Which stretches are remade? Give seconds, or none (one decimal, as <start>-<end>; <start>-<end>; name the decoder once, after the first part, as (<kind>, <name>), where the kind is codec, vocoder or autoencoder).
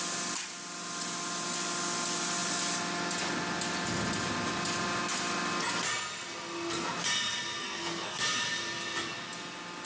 7.6-8.2 (codec, SNAC)